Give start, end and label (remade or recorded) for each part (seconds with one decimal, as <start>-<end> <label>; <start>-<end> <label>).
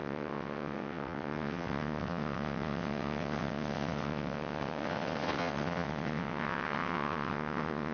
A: 0.0-7.9 remade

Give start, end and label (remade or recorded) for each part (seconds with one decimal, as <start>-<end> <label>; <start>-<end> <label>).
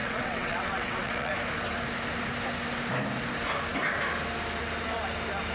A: 0.0-1.3 remade; 1.3-5.5 recorded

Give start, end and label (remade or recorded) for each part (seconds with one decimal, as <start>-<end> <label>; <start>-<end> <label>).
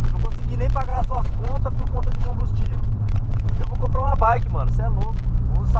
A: 0.0-0.9 recorded; 0.9-4.4 remade; 4.4-5.8 recorded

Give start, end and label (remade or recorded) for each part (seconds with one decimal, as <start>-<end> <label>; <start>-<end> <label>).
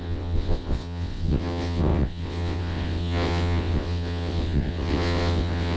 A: 0.0-5.8 remade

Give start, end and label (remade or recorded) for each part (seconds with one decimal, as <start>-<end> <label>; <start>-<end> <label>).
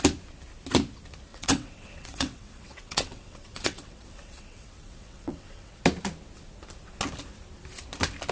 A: 0.0-1.3 recorded; 1.3-5.8 remade; 5.8-8.3 recorded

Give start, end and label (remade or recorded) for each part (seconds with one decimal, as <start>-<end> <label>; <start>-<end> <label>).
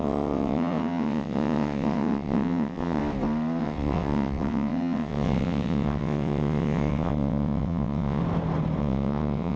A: 0.0-3.0 remade; 3.0-3.6 recorded; 3.6-8.2 remade; 8.2-8.8 recorded; 8.8-9.6 remade